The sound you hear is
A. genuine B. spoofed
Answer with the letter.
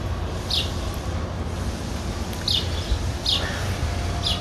A